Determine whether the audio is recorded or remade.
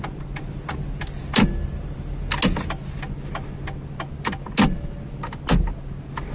recorded